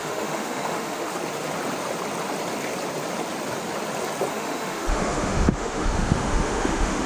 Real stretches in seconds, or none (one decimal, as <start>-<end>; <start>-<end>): 1.1-4.3